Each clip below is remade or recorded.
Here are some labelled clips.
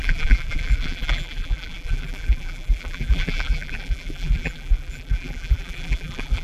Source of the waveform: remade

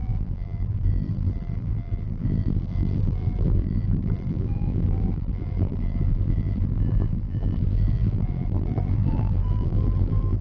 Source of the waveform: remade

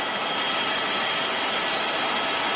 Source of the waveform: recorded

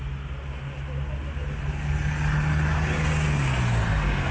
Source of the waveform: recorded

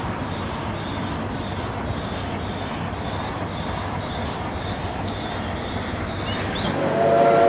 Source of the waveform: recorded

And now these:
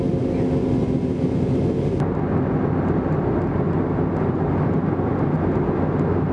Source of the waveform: recorded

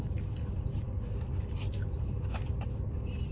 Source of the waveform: recorded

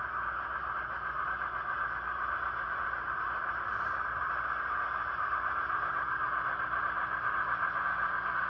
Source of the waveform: recorded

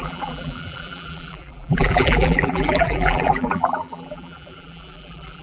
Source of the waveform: remade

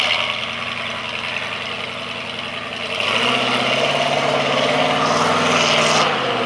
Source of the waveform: recorded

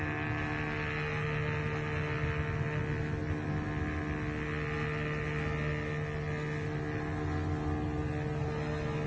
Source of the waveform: recorded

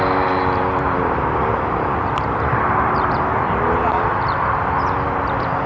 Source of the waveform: remade